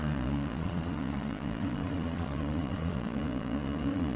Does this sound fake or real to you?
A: fake